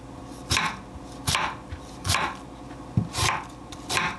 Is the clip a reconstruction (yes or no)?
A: no